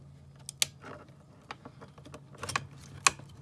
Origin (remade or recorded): recorded